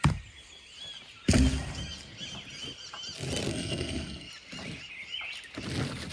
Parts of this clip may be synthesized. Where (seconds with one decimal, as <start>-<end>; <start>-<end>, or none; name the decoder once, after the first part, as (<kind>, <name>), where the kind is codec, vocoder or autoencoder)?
3.5-4.3 (codec, SNAC)